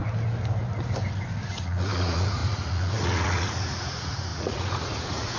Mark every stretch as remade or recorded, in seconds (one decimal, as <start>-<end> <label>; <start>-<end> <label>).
0.0-1.5 recorded; 1.5-5.4 remade

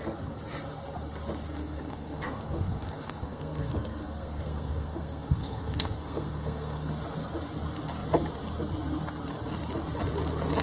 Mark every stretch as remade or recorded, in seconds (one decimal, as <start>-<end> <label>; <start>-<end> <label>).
0.0-1.6 recorded; 1.6-6.9 remade; 6.9-10.6 recorded

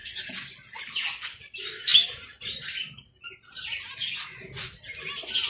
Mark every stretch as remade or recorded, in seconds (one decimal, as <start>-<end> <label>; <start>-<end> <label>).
0.0-5.5 recorded

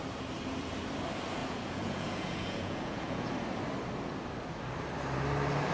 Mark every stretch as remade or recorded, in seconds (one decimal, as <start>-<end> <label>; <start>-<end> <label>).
0.0-1.4 recorded; 1.4-3.3 remade; 3.3-5.7 recorded

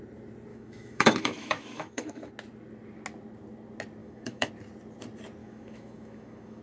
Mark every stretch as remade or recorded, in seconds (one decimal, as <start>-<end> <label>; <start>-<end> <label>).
0.0-0.5 recorded; 0.5-2.3 remade; 2.3-4.0 recorded; 4.0-4.5 remade; 4.5-5.4 recorded; 5.4-6.6 remade